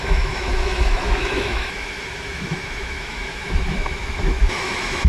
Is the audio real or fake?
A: fake